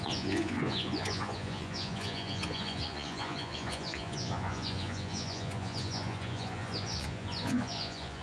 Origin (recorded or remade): remade